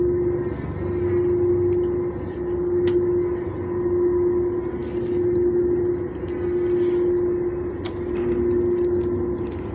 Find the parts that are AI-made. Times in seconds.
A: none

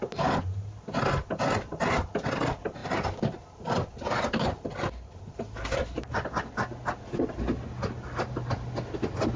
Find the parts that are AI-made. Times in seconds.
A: none